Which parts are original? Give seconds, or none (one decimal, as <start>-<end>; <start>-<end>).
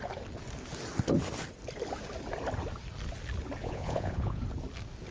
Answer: 0.0-3.6; 4.4-5.1